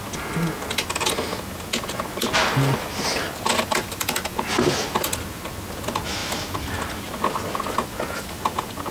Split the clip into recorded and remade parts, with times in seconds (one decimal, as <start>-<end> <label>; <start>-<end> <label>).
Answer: 0.0-2.4 recorded; 2.4-5.0 remade; 5.0-6.2 recorded; 6.2-6.7 remade; 6.7-8.9 recorded